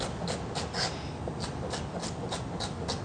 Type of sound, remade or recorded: recorded